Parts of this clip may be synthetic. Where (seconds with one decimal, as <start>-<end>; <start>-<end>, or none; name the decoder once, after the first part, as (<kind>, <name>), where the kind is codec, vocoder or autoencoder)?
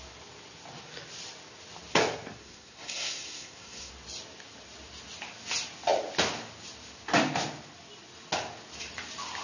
2.4-3.9 (codec, SNAC)